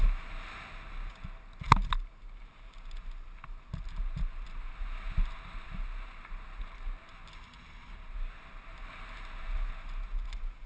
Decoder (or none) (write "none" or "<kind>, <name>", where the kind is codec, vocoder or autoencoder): none